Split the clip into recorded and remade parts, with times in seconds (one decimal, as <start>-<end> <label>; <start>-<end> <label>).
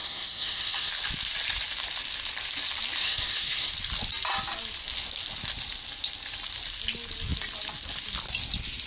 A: 0.0-0.9 remade; 0.9-3.0 recorded; 3.0-3.7 remade; 3.7-8.9 recorded